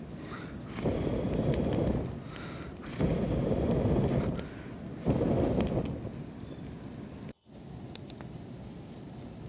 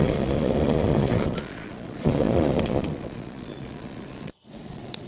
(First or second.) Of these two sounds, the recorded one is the first